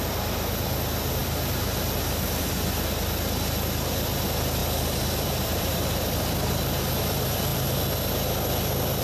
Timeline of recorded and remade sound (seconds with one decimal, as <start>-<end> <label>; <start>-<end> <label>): 0.0-4.6 recorded; 4.6-6.2 remade; 6.2-9.0 recorded